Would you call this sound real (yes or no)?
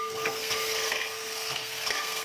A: no